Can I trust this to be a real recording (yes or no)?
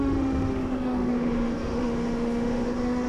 no